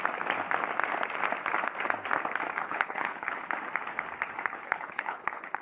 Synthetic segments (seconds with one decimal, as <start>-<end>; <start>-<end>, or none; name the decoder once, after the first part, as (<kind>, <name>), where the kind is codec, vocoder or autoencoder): 2.6-3.5 (codec, HILCodec); 4.5-5.6